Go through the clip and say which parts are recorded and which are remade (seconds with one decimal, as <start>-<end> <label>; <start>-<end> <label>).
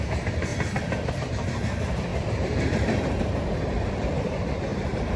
0.0-0.5 remade; 0.5-1.1 recorded; 1.1-5.2 remade